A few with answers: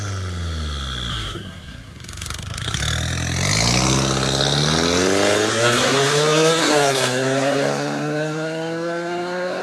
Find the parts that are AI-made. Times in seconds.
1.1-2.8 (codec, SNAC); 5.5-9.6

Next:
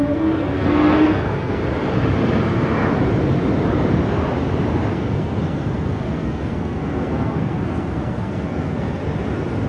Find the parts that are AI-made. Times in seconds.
0.0-1.6 (codec, SNAC); 4.9-9.0

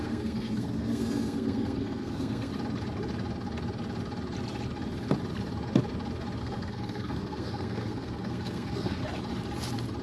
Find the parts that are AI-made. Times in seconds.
0.0-2.5 (codec, SNAC); 6.4-9.0

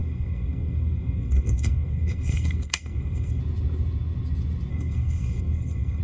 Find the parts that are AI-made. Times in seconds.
0.0-3.4 (codec, SNAC); 4.7-6.0